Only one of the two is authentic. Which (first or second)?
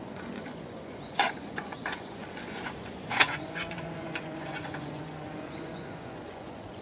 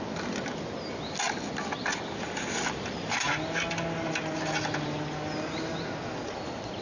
second